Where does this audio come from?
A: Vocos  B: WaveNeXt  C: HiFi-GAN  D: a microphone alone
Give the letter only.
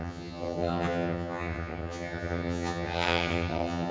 C